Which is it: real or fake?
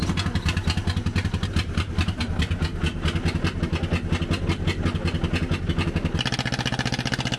real